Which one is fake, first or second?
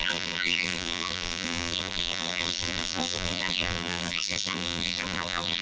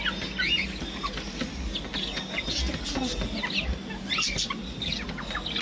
first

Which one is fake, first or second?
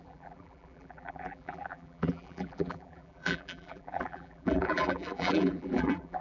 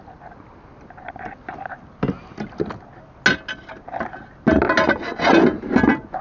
first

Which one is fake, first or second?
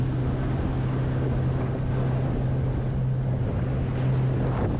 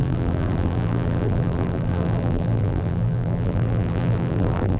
second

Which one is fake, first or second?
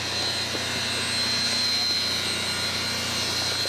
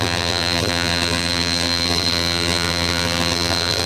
second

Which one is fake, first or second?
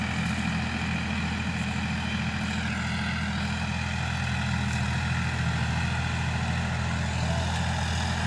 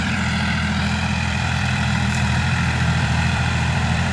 second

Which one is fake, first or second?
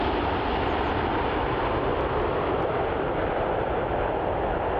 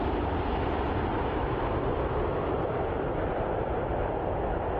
first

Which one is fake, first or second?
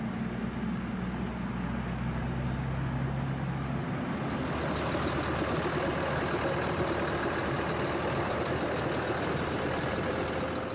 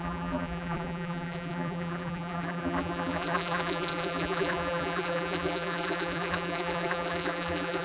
second